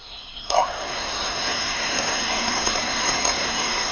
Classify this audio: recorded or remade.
remade